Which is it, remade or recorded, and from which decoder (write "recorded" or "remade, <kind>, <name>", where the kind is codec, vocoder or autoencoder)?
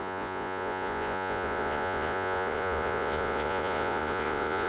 remade, vocoder, Vocos